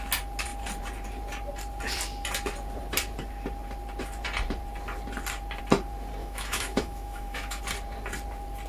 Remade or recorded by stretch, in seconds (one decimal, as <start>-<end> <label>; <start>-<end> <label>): 0.0-6.2 recorded; 6.2-7.6 remade; 7.6-8.7 recorded